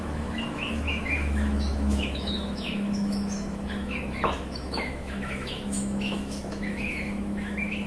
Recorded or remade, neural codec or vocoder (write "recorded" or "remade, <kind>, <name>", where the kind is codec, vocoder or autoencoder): remade, autoencoder, DAC-VAE